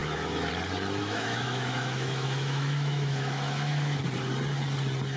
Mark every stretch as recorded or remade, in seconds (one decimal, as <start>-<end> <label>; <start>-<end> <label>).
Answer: 0.0-0.5 remade; 0.5-1.0 recorded; 1.0-4.0 remade; 4.0-5.2 recorded